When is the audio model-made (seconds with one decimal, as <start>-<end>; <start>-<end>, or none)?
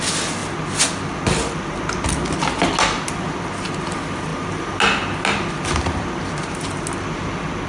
none